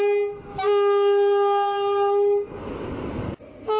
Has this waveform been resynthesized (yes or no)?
no